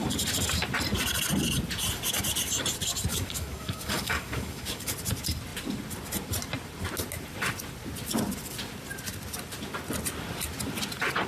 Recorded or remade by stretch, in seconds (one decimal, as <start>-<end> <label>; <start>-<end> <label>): 0.0-3.1 recorded; 3.1-4.9 remade; 4.9-11.3 recorded